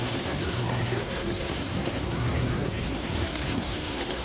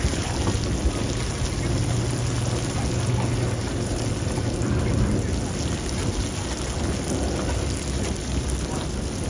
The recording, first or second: second